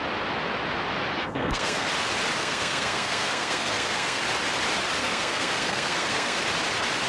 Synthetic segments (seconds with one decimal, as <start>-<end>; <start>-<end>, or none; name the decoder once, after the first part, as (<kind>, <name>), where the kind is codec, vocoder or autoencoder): 1.1-1.9 (codec, SNAC); 2.4-4.2; 5.0-6.4

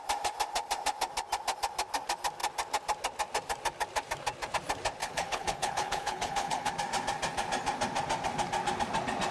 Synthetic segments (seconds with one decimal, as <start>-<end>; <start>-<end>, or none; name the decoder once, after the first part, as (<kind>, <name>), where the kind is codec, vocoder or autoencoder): 5.0-6.7 (codec, HILCodec)